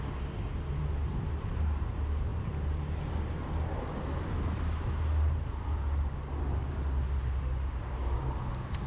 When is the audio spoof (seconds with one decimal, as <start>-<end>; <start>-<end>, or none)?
none